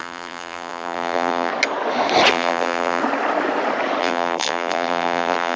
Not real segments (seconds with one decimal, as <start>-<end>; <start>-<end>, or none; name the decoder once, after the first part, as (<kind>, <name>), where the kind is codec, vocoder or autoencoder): 0.0-1.5 (vocoder, BigVGAN v2); 2.3-3.0; 4.0-5.6